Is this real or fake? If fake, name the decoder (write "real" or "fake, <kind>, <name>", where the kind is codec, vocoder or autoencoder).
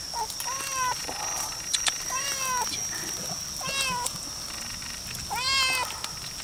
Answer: real